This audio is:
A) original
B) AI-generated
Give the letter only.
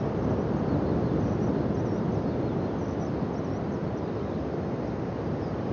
A